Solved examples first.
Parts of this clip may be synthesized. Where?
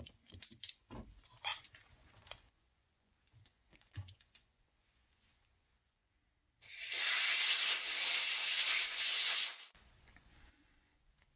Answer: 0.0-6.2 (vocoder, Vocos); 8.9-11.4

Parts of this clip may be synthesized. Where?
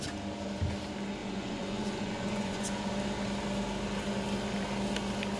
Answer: 1.2-2.9 (vocoder, Vocos)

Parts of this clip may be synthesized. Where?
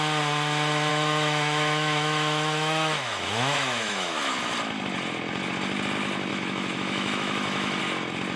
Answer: 0.9-4.4 (autoencoder, DAC-VAE); 6.3-7.8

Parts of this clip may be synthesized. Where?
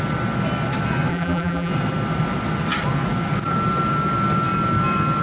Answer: 1.1-1.7 (vocoder, BigVGAN v2)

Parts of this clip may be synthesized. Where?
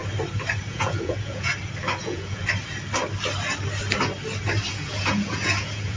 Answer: 0.7-1.5 (vocoder, Vocos); 2.0-2.4; 4.7-6.0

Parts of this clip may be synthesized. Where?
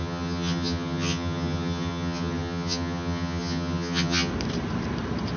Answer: 0.0-4.3 (vocoder, HiFi-GAN)